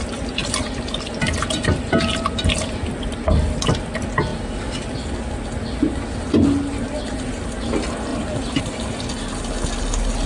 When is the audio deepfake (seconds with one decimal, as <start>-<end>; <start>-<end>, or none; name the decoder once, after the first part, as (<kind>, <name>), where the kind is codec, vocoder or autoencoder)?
0.4-1.6 (vocoder, BigVGAN v2); 4.3-5.1; 8.1-8.6